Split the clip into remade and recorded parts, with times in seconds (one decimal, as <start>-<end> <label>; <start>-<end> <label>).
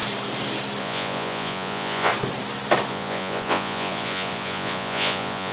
0.0-0.8 recorded; 0.8-2.1 remade; 2.1-2.9 recorded; 2.9-5.5 remade